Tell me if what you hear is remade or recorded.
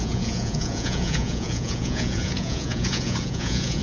remade